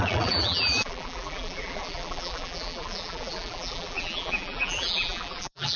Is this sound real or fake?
fake